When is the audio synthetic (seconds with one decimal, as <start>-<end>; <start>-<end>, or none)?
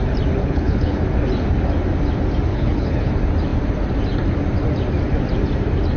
0.4-1.0; 2.5-3.1